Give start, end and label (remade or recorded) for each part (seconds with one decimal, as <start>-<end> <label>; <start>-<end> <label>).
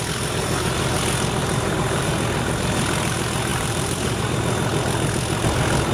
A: 0.0-1.4 recorded; 1.4-2.1 remade; 2.1-3.5 recorded; 3.5-4.2 remade; 4.2-5.9 recorded